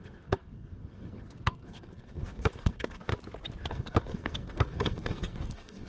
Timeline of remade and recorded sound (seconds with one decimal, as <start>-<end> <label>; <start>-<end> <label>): 0.0-3.1 remade; 3.1-3.7 recorded; 3.7-5.9 remade